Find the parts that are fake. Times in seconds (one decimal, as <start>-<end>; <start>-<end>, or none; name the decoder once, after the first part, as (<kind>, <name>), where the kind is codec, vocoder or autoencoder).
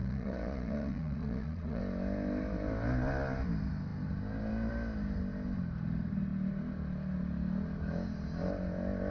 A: 0.0-1.8 (vocoder, Vocos)